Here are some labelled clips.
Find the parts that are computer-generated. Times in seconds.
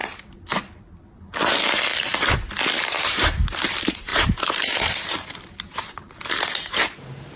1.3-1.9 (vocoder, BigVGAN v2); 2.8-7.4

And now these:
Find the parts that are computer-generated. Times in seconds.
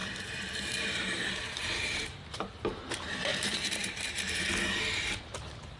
0.0-2.3 (vocoder, BigVGAN v2); 3.3-4.5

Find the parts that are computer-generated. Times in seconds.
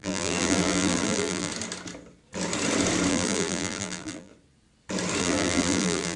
0.0-1.5 (vocoder, BigVGAN v2); 3.1-4.3; 5.2-6.2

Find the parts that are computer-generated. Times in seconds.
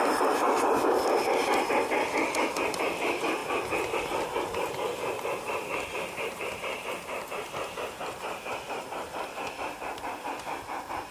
4.9-7.5 (vocoder, BigVGAN v2); 8.5-10.2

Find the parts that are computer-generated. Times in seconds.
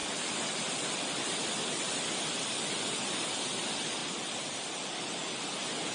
0.0-3.3 (vocoder, BigVGAN v2); 4.0-5.1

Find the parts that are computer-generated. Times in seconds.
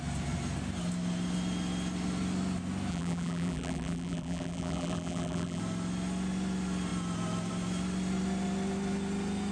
2.9-5.6 (vocoder, BigVGAN v2)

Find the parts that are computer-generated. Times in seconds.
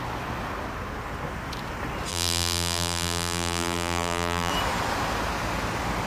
2.1-4.5 (vocoder, BigVGAN v2)